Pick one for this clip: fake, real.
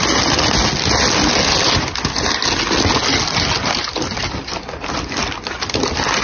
real